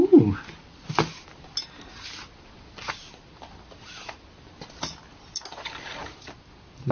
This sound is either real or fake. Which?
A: real